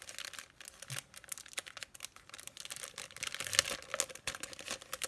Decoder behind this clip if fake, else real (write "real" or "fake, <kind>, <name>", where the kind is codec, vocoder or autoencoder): real